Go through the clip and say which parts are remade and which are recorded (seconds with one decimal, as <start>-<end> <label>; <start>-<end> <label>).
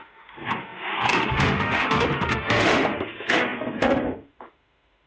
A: 0.0-5.1 remade